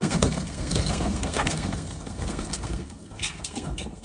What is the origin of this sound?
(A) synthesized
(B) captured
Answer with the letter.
A